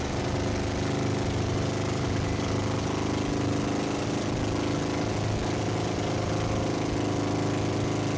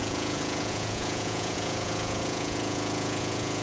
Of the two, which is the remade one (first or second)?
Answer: second